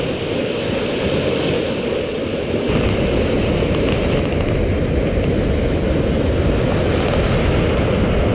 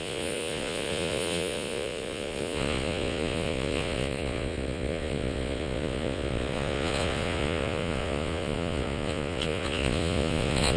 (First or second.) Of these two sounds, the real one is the first